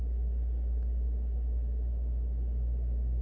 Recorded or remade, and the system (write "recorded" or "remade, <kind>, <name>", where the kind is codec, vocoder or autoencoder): recorded